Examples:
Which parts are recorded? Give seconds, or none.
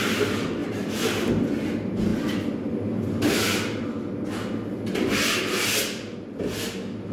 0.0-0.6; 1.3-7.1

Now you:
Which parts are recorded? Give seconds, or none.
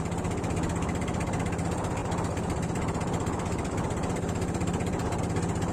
0.0-2.0; 5.2-5.7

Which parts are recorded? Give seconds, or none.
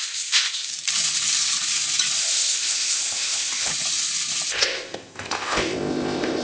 0.7-2.2; 3.7-4.5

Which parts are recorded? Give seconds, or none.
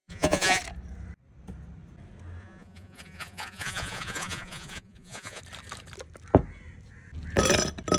0.6-2.4; 5.4-8.0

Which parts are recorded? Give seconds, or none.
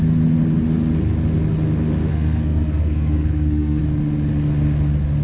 0.0-2.1; 3.8-5.2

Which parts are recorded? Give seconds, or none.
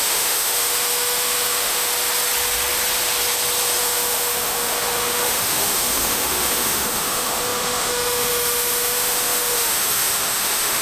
1.9-3.8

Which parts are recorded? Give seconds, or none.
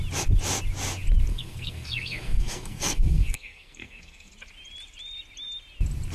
0.0-1.3; 4.3-6.1